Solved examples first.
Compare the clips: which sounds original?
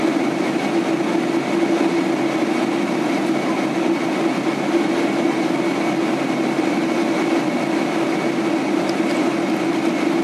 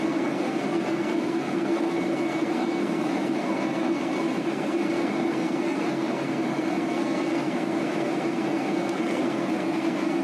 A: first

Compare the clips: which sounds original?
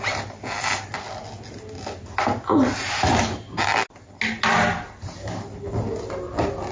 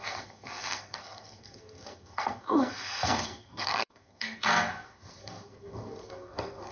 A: first